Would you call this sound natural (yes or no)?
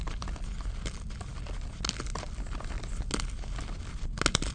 yes